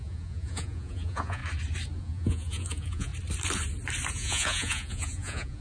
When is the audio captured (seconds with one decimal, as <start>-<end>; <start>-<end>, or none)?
1.4-2.0; 3.1-4.1